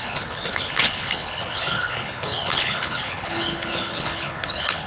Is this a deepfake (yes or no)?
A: yes